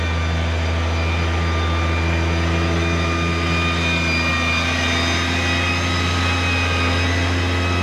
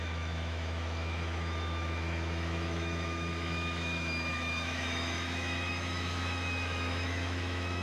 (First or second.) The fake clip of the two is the second